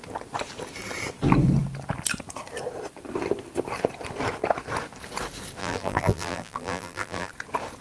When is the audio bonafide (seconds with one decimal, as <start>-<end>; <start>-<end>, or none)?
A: 0.0-5.6; 7.3-7.8